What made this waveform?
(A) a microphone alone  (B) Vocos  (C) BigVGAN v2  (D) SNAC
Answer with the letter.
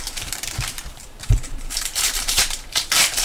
C